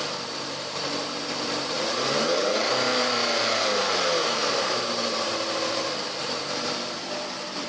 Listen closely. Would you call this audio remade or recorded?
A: remade